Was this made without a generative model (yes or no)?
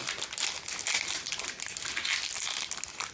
yes